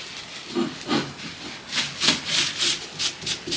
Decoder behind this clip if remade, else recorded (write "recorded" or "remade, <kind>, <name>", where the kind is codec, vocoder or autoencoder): recorded